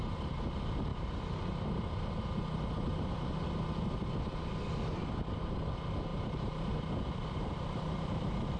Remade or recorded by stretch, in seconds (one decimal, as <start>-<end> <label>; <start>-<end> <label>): 0.0-0.9 recorded; 0.9-2.3 remade; 2.3-6.1 recorded; 6.1-6.8 remade; 6.8-8.6 recorded